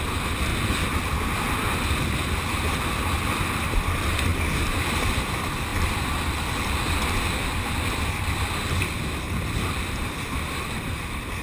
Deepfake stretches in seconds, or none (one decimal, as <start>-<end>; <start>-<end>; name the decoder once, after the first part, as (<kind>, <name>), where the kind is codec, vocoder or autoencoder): 0.0-0.5 (vocoder, BigVGAN v2); 3.0-5.7; 6.4-11.4